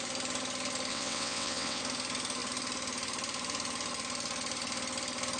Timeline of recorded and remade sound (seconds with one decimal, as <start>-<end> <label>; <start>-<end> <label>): 0.0-0.9 recorded; 0.9-1.8 remade; 1.8-5.4 recorded